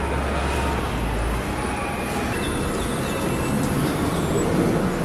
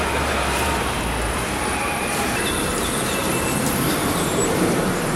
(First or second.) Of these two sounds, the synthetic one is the second